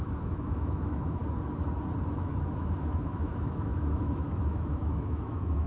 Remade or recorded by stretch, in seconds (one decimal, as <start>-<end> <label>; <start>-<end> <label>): 0.0-1.2 remade; 1.2-2.1 recorded; 2.1-5.7 remade